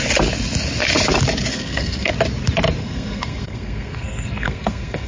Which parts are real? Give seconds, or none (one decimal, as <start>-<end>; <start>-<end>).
0.0-1.5; 2.1-2.8